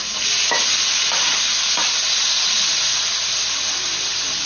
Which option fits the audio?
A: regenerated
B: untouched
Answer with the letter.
B